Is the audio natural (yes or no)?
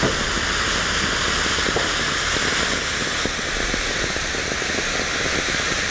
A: yes